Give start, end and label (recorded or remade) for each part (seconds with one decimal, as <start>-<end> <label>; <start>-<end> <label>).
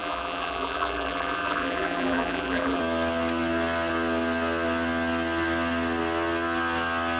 0.0-2.8 remade; 2.8-7.2 recorded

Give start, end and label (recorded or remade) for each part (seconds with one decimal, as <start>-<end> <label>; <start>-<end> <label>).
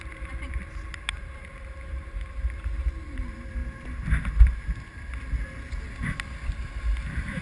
0.0-3.6 remade; 3.6-6.5 recorded; 6.5-7.4 remade